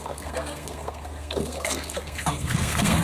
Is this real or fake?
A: fake